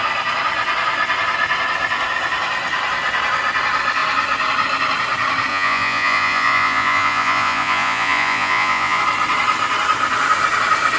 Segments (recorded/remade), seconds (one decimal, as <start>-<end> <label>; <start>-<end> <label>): 0.0-5.5 recorded; 5.5-9.0 remade; 9.0-11.0 recorded